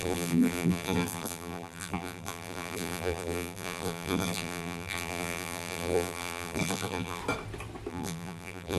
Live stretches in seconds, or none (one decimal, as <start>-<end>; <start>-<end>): 7.2-7.9